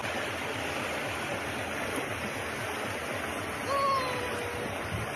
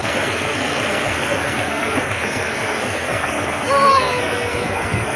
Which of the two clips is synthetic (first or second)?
second